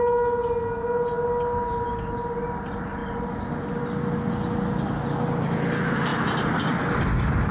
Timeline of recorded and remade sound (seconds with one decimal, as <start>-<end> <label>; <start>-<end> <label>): 0.0-7.5 recorded